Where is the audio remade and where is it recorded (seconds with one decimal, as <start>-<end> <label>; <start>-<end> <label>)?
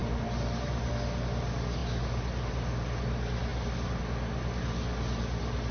0.0-0.9 remade; 0.9-5.7 recorded